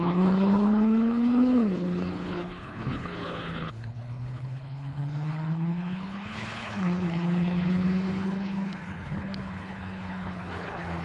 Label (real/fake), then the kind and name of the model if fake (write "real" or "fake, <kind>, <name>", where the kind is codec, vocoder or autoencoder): fake, codec, HILCodec